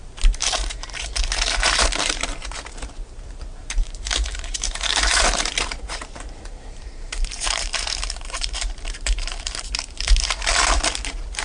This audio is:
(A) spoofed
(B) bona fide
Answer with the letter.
A